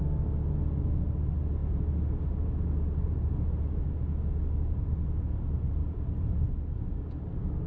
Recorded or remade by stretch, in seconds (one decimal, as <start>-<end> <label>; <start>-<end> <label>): 0.0-5.8 recorded; 5.8-6.3 remade; 6.3-7.7 recorded